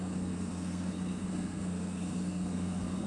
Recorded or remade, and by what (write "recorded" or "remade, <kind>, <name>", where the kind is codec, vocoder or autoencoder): remade, codec, SNAC